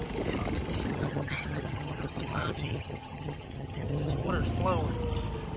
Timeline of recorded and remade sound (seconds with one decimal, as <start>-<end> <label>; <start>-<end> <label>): 0.0-0.9 recorded; 0.9-4.3 remade; 4.3-5.6 recorded